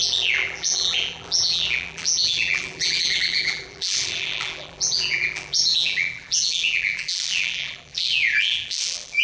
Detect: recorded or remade remade